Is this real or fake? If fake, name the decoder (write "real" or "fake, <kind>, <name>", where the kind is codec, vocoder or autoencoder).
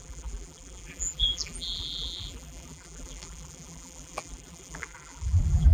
fake, vocoder, BigVGAN v2